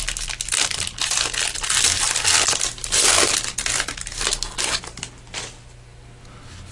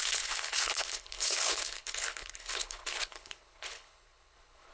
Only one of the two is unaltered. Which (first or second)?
first